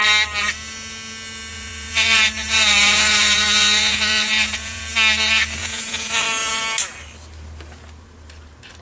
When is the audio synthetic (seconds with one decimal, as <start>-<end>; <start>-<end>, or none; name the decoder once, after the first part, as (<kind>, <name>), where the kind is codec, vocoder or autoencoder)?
1.5-4.8 (vocoder, Vocos); 5.6-6.1